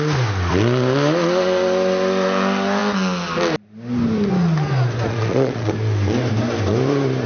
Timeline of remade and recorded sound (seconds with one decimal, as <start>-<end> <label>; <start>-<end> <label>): 0.0-5.1 recorded; 5.1-5.7 remade; 5.7-7.3 recorded